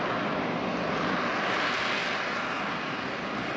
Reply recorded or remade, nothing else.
recorded